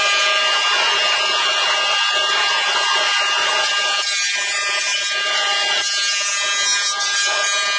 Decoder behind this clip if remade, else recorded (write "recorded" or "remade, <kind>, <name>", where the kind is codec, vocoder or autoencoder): recorded